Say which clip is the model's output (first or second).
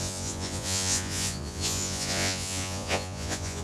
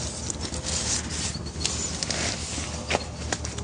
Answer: first